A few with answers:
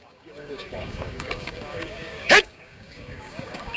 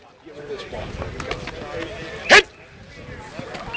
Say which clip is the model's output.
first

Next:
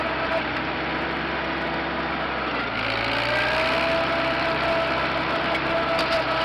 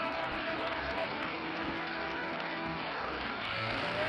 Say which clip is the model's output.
second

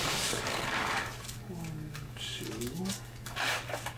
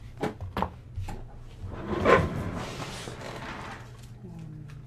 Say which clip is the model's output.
first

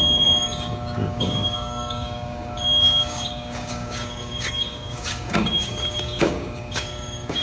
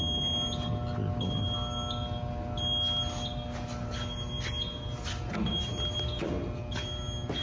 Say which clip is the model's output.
first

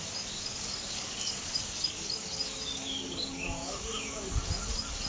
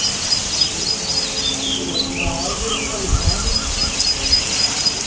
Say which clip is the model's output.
first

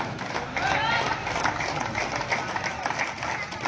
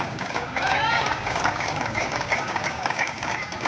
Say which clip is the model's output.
second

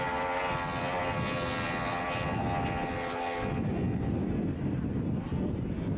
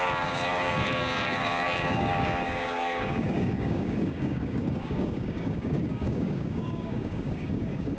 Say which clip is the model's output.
second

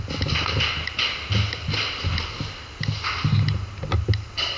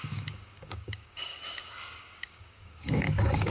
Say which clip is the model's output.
second